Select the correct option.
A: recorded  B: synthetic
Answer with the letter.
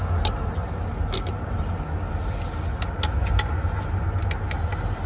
A